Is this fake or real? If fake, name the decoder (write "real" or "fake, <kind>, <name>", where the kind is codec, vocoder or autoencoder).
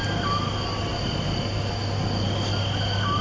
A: real